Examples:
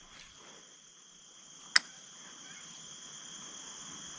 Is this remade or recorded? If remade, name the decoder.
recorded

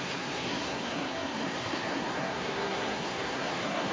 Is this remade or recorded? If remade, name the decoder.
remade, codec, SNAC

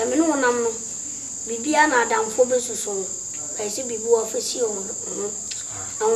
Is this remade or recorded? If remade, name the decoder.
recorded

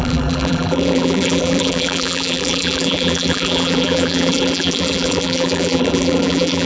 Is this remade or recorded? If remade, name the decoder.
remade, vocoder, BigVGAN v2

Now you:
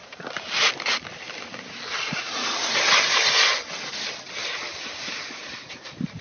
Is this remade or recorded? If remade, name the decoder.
recorded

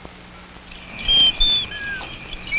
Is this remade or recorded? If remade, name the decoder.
recorded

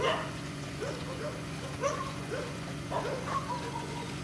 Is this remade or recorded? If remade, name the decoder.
remade, vocoder, Vocos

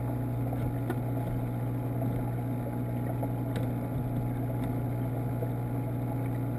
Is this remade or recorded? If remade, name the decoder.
recorded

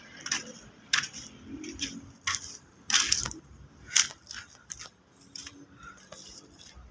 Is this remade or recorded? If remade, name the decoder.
remade, vocoder, BigVGAN v2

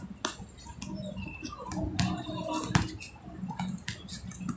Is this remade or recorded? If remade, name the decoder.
recorded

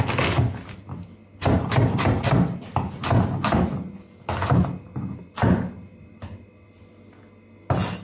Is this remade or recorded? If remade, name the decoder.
recorded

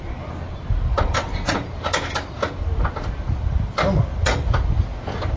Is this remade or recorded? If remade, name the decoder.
recorded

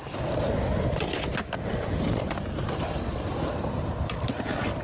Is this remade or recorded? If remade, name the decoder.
remade, vocoder, BigVGAN v2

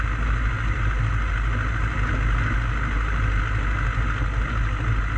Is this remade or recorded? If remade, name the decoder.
recorded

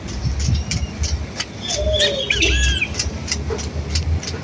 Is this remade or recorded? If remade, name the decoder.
recorded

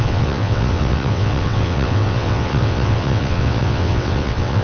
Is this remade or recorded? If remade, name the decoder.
remade, vocoder, WaveNeXt